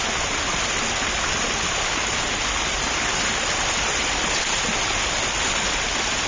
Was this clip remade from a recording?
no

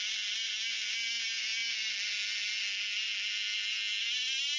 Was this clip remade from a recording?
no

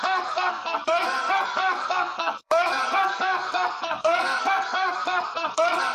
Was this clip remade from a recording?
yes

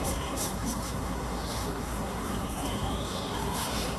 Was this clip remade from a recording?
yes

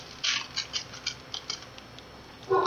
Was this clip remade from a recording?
no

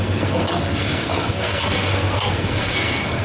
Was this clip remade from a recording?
yes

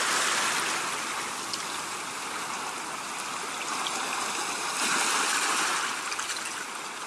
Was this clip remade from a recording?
no